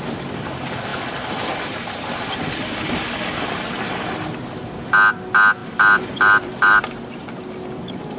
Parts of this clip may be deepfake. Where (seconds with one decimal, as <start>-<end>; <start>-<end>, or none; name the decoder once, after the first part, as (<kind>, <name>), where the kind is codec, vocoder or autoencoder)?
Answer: 0.9-3.1 (vocoder, BigVGAN v2); 5.6-6.8